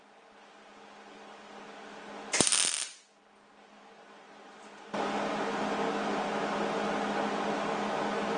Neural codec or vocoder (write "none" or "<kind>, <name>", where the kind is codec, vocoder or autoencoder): none